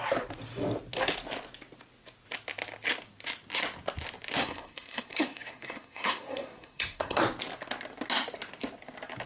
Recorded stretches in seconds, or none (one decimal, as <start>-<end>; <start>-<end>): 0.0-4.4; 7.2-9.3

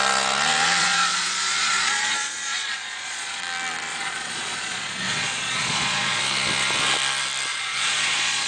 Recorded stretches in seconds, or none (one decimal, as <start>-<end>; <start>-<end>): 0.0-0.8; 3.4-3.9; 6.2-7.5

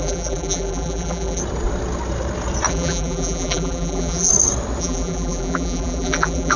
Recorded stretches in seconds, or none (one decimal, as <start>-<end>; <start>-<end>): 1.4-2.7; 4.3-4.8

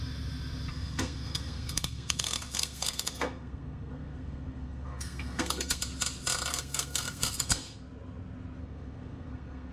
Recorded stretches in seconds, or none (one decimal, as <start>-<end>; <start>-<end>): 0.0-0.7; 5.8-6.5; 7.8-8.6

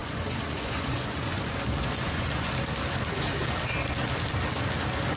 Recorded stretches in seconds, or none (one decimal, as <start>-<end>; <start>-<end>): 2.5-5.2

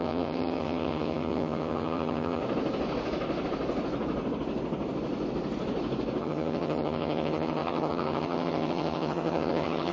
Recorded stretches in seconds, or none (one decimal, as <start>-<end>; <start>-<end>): 2.4-6.2

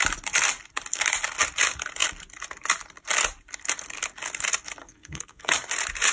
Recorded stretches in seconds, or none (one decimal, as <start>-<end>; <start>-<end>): 0.0-4.8; 5.5-6.1